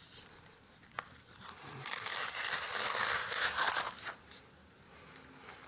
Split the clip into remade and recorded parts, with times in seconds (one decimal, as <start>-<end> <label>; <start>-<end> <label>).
0.0-3.2 recorded; 3.2-4.2 remade; 4.2-5.7 recorded